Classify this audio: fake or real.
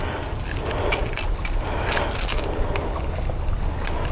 real